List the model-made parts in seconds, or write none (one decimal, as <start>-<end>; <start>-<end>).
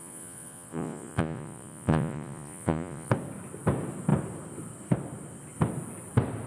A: 0.0-3.1